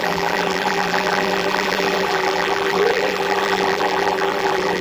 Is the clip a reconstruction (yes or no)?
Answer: yes